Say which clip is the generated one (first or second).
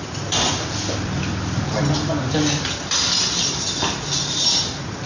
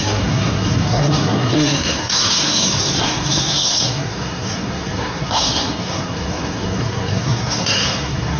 second